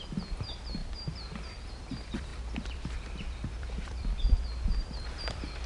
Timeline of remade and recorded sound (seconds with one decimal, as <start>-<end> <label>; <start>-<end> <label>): 0.0-5.7 remade